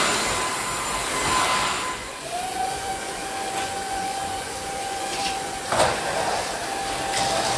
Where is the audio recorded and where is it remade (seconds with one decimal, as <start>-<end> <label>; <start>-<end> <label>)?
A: 0.0-2.0 recorded; 2.0-6.0 remade; 6.0-7.6 recorded